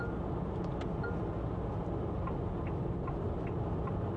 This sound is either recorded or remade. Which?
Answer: recorded